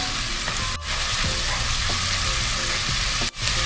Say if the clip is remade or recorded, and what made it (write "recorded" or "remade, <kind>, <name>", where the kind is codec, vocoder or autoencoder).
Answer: recorded